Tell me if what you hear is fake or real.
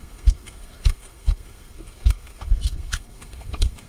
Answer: fake